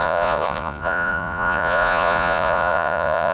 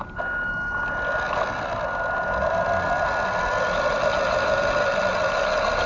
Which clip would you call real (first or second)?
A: second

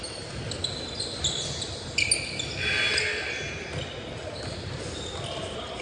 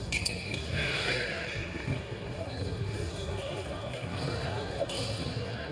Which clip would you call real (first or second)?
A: first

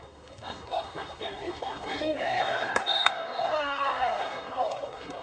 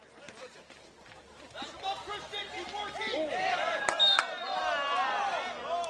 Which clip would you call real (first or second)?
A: second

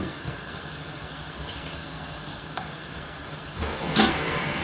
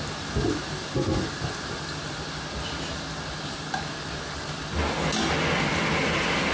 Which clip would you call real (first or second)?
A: second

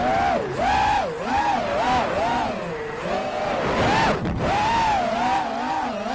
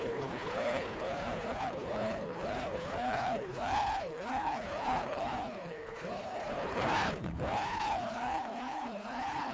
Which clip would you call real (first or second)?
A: first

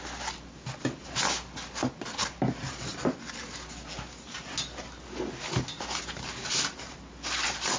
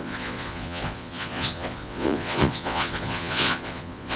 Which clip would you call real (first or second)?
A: first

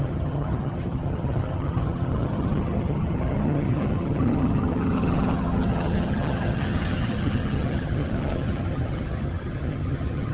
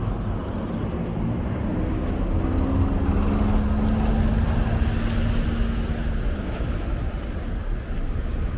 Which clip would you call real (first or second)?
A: second